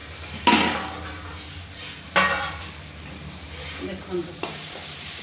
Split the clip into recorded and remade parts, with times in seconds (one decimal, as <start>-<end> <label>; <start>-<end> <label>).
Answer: 0.0-3.1 recorded; 3.1-5.2 remade